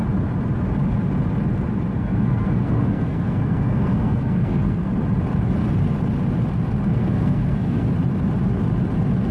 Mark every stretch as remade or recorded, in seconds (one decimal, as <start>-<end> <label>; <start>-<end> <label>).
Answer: 0.0-1.9 recorded; 1.9-4.9 remade; 4.9-6.9 recorded; 6.9-7.9 remade; 7.9-9.3 recorded